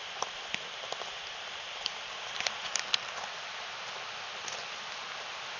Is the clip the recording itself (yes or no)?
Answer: yes